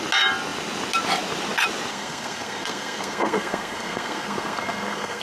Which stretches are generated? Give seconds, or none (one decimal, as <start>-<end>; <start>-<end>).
1.9-5.2